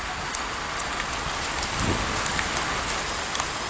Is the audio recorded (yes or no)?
yes